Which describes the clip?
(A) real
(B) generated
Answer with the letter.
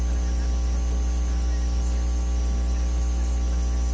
A